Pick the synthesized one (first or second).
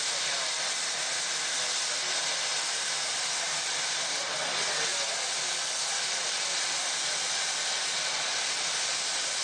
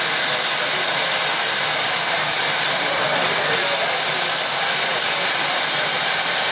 second